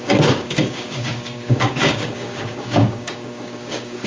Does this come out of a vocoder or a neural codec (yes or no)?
yes